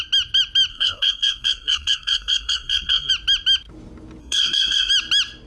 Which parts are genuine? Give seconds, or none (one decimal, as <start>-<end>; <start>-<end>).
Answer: 0.0-0.7; 3.1-4.2; 4.9-5.5